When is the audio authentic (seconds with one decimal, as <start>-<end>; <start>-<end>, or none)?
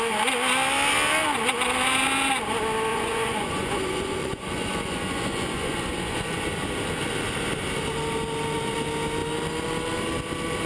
0.0-2.9; 6.5-10.7